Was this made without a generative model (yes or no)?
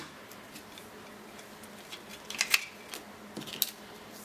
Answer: yes